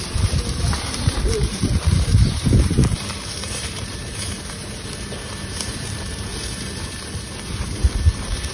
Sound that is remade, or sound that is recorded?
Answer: remade